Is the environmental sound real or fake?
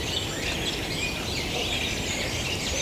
real